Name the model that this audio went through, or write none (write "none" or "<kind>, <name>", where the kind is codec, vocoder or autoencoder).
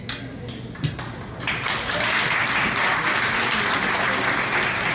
none